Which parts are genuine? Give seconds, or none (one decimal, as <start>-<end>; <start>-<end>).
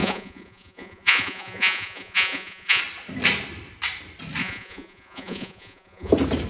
2.8-4.4; 6.1-6.5